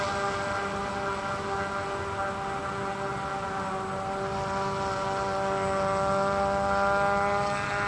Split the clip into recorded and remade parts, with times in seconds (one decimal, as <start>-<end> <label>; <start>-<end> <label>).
0.0-7.9 recorded